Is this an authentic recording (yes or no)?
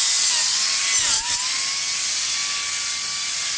yes